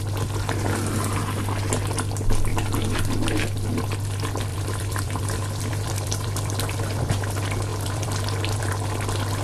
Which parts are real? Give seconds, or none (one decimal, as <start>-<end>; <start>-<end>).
0.0-4.5; 7.0-7.7; 8.7-9.4